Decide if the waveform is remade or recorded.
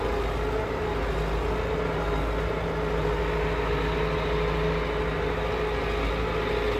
recorded